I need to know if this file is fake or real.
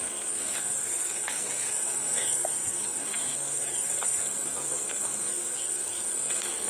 fake